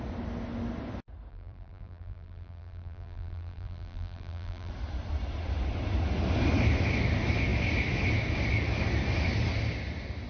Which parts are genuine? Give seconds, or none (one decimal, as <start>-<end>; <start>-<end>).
0.0-1.3; 4.7-10.3